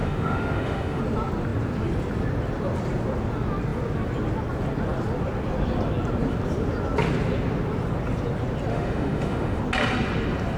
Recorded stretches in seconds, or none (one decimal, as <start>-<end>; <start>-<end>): 1.0-8.7; 9.6-10.6

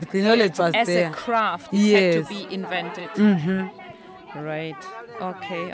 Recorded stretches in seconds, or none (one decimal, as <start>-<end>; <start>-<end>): 0.6-3.0; 3.8-5.7

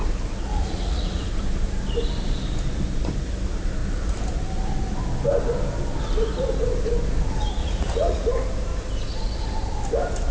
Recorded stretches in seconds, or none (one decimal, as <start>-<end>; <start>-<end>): 0.0-0.5; 1.3-7.6; 8.3-10.3